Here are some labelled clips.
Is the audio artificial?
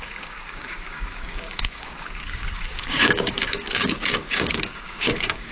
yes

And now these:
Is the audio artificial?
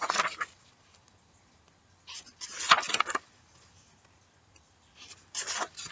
no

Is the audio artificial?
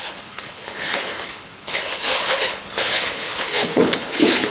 yes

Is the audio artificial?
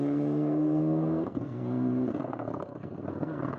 yes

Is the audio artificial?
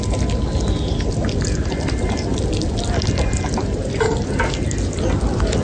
no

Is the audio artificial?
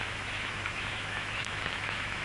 yes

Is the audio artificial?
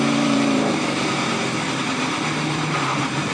yes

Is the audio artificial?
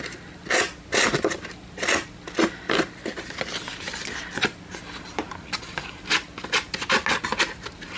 no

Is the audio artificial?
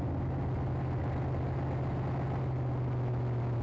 no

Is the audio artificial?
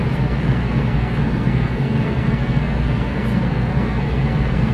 yes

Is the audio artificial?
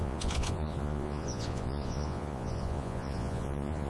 yes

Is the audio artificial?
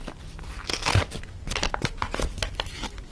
no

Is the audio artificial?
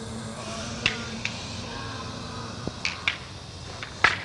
no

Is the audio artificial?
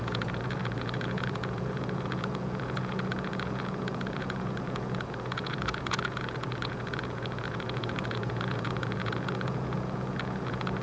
yes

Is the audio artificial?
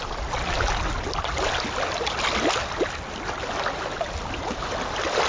no